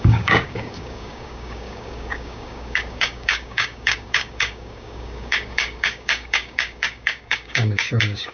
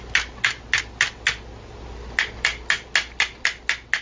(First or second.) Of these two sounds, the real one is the second